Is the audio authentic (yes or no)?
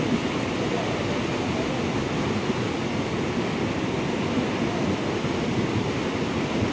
yes